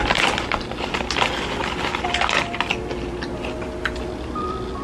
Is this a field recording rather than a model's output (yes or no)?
yes